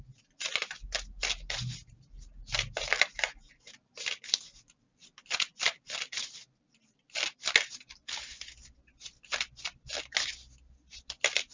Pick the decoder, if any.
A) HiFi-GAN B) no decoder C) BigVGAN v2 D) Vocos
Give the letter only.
B